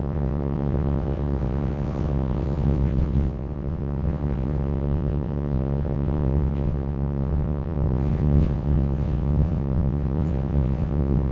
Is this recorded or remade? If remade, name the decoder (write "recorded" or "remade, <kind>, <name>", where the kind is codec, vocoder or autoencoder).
remade, vocoder, WaveNeXt